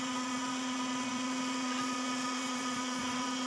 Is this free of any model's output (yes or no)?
no